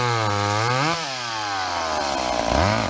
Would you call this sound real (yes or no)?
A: yes